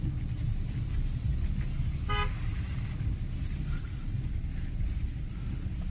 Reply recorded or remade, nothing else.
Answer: recorded